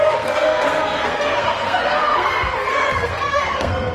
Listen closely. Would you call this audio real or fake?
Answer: fake